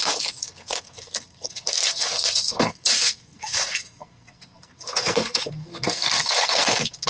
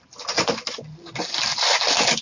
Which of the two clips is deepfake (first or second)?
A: first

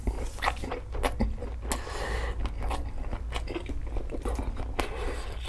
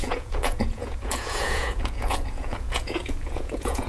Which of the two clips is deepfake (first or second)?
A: second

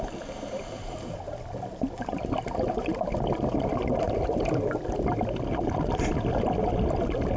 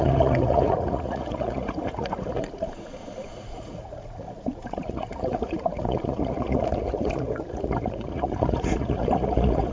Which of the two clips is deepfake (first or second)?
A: second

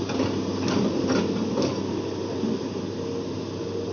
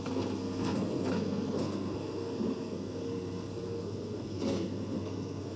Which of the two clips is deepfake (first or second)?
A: second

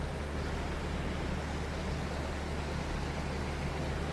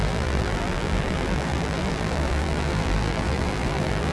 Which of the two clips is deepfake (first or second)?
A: second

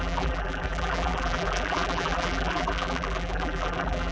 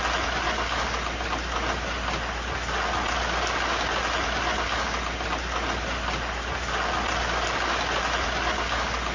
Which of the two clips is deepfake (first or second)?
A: first